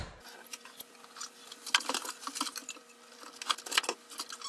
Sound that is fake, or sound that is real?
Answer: real